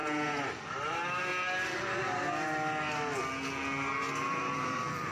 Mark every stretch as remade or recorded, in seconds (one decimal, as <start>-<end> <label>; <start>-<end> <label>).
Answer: 0.0-0.9 recorded; 0.9-1.3 remade; 1.3-4.4 recorded; 4.4-5.1 remade